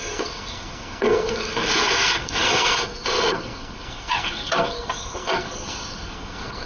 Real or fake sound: fake